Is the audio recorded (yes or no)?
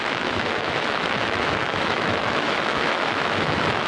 no